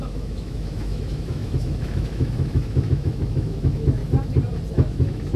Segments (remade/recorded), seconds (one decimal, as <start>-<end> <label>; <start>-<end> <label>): 0.0-4.0 remade; 4.0-4.7 recorded; 4.7-5.4 remade